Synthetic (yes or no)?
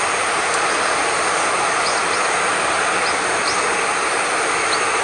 no